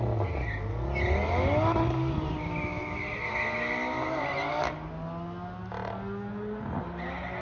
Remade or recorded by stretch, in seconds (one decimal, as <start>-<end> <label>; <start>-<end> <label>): 0.0-7.4 recorded